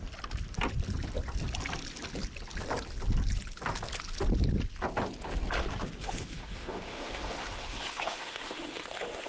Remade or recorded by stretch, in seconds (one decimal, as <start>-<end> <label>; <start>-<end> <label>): 0.0-6.0 recorded; 6.0-9.3 remade